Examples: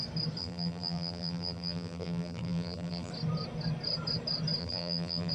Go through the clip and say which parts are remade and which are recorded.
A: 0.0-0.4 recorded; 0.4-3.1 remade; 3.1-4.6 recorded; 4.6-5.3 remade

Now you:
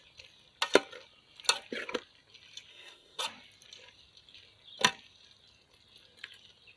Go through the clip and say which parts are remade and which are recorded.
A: 0.0-2.7 recorded; 2.7-3.2 remade; 3.2-6.8 recorded

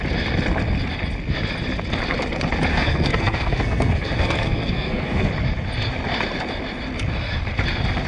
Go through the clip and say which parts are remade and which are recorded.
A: 0.0-2.7 recorded; 2.7-5.3 remade; 5.3-8.1 recorded

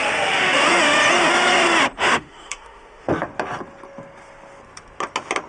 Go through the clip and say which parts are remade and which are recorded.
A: 0.0-0.6 remade; 0.6-2.0 recorded; 2.0-3.1 remade; 3.1-5.5 recorded

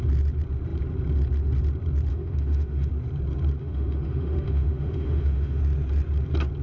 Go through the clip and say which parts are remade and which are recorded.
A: 0.0-2.1 recorded; 2.1-2.9 remade; 2.9-3.6 recorded; 3.6-5.6 remade; 5.6-6.6 recorded